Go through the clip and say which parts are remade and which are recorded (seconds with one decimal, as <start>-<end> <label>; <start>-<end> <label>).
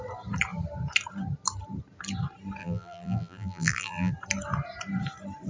0.0-2.6 recorded; 2.6-4.1 remade; 4.1-5.5 recorded